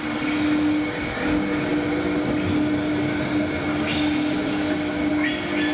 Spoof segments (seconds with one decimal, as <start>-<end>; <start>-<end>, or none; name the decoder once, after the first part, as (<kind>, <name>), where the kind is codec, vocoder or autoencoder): 1.7-5.1 (vocoder, BigVGAN v2)